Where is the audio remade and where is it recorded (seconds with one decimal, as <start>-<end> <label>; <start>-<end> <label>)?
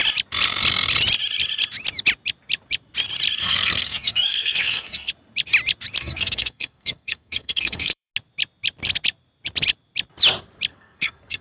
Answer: 0.0-3.4 recorded; 3.4-5.1 remade; 5.1-6.0 recorded; 6.0-8.1 remade; 8.1-10.7 recorded; 10.7-11.4 remade